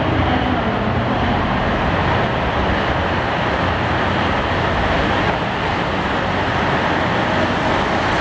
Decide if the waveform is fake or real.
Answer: real